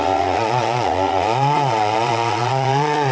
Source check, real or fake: fake